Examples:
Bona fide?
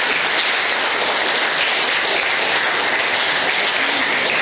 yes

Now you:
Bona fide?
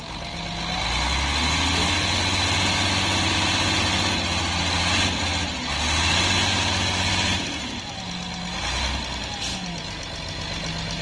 yes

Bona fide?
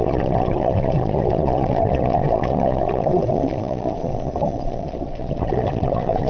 no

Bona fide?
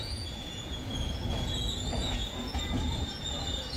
no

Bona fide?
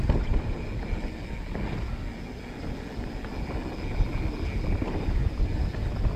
yes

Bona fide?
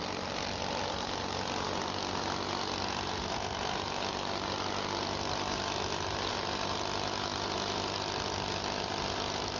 yes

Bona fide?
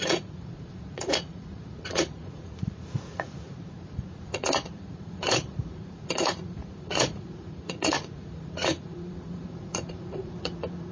no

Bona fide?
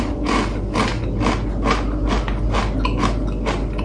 yes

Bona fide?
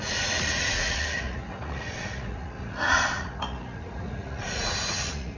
no